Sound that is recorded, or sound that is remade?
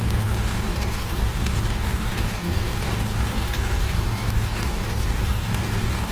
remade